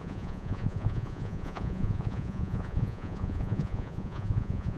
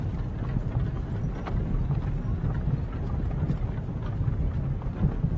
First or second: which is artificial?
first